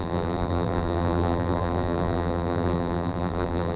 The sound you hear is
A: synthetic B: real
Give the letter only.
A